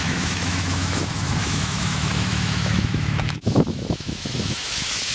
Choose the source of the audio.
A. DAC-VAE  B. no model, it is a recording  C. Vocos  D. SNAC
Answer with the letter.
A